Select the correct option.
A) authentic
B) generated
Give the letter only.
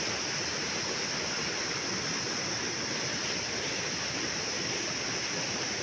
A